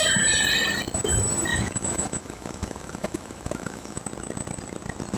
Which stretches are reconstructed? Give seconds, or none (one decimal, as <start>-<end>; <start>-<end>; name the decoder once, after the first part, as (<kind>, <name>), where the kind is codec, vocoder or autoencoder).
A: 1.5-4.0 (autoencoder, DAC-VAE)